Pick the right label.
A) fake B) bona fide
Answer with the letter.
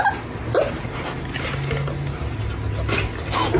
B